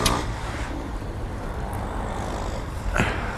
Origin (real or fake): fake